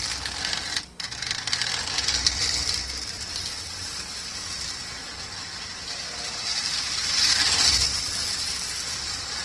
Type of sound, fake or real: real